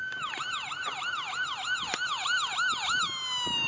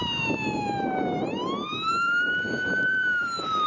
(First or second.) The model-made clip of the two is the second